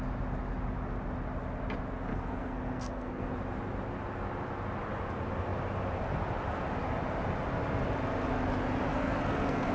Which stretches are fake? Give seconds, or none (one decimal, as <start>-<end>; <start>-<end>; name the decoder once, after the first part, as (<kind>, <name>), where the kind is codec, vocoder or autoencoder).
2.1-3.3 (codec, SNAC); 8.9-9.7